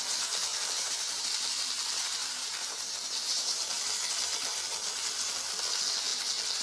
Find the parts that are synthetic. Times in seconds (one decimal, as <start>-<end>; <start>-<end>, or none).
0.5-1.3; 2.2-3.8